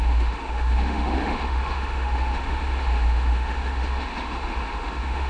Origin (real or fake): fake